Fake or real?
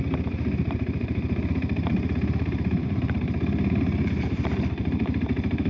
fake